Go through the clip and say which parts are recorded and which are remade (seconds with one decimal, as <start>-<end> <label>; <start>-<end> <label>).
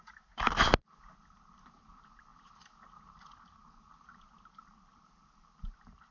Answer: 0.0-6.1 recorded